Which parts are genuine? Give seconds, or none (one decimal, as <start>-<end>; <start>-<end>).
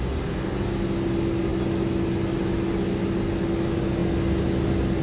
0.0-5.0